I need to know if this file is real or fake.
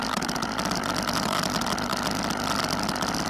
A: real